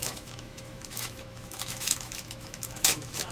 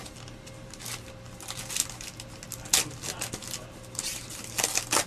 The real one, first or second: second